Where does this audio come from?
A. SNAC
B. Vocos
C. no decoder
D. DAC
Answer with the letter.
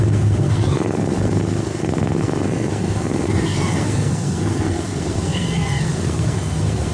A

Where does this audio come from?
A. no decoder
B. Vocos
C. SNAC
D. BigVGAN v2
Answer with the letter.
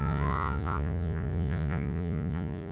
B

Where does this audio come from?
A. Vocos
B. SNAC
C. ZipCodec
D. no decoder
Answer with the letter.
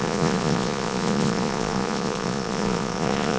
A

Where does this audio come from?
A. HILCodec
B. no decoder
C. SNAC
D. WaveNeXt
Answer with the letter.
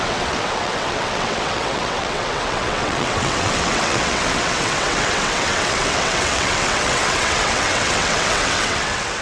D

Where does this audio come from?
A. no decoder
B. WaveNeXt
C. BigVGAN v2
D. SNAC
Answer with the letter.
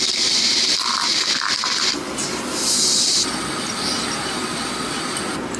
C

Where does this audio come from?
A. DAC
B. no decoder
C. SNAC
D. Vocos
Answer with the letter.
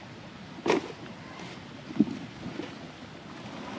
B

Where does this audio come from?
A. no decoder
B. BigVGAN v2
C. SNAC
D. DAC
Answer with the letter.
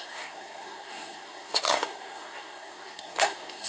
C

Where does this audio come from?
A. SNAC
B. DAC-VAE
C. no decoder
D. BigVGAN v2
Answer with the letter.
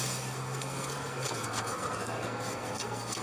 A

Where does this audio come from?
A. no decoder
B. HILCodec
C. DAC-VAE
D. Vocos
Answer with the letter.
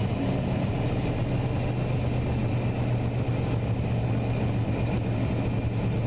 A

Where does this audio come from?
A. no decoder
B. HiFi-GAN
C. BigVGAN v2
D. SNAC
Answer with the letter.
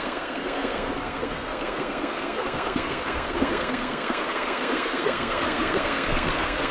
D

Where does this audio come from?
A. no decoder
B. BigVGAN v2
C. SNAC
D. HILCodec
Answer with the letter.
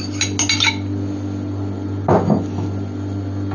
A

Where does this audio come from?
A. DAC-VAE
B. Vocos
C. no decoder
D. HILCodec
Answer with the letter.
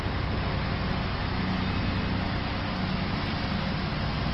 C